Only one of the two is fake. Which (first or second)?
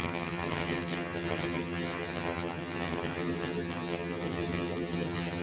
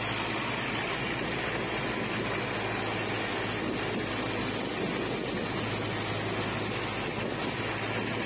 first